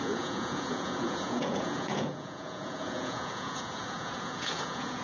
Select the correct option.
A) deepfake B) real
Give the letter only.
A